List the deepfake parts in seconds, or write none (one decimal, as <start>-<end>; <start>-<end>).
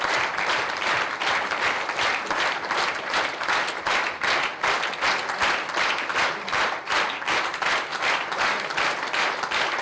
0.0-4.5; 5.7-9.8